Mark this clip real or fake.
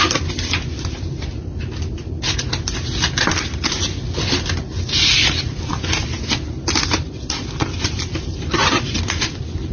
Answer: fake